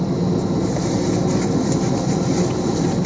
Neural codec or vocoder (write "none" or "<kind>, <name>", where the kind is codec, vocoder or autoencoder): none